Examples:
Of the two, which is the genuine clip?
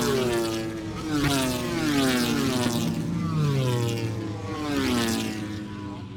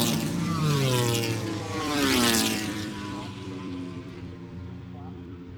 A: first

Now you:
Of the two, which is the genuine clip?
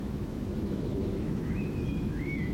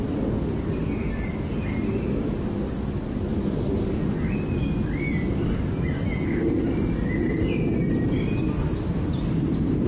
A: second